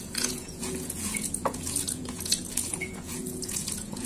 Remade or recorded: remade